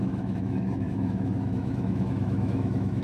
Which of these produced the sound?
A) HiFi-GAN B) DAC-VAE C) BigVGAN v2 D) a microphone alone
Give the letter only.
B